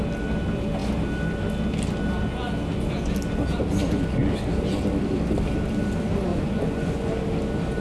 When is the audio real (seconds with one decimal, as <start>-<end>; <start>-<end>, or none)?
0.0-6.3; 7.1-7.8